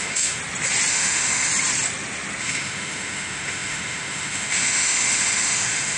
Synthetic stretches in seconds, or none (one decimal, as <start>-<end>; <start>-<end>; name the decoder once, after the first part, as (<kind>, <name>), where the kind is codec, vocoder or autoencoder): 0.0-0.4 (autoencoder, DAC-VAE); 0.9-1.5; 2.4-6.0